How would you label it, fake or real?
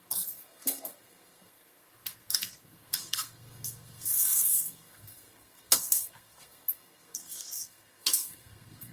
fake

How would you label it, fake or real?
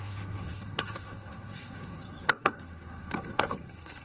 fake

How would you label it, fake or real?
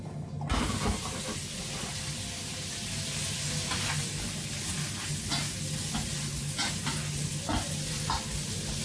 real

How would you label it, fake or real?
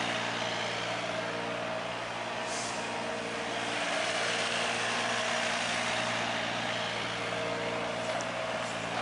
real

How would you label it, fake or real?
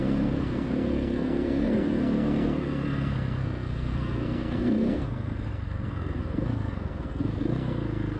fake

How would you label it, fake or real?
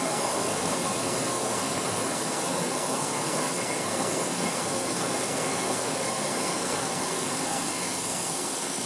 fake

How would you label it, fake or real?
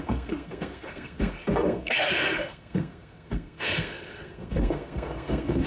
fake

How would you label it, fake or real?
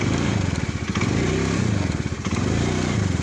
real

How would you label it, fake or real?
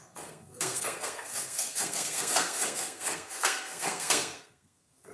fake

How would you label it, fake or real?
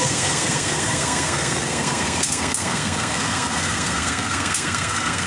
fake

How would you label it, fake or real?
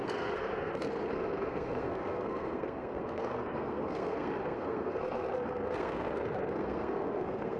fake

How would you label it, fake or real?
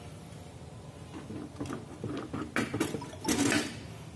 real